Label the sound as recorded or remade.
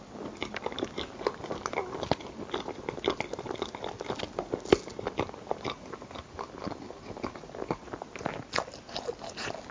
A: recorded